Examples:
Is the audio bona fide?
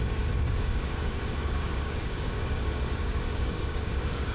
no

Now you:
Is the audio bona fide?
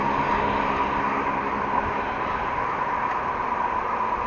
yes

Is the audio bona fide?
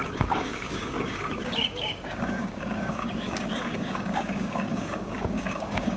no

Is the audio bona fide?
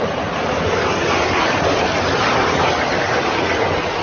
yes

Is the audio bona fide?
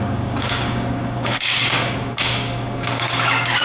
no